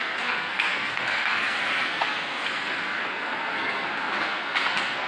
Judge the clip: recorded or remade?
remade